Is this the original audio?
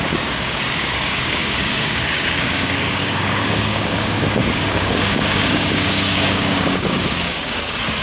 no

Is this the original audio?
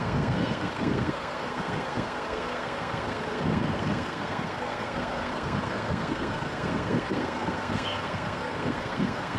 no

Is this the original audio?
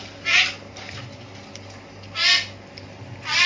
yes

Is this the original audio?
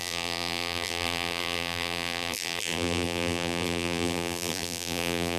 no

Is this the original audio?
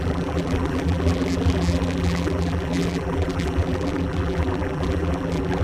no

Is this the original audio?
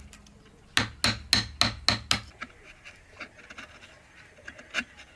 yes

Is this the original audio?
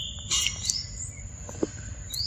no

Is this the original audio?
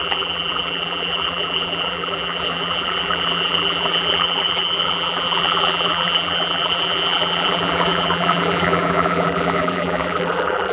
no